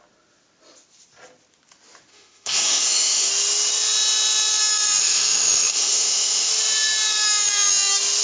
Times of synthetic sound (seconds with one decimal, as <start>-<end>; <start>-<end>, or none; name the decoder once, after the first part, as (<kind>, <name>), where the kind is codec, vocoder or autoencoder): 2.1-3.3 (autoencoder, DAC-VAE); 5.0-6.5